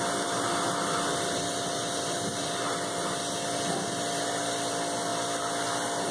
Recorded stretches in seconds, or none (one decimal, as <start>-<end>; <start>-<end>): 0.0-6.1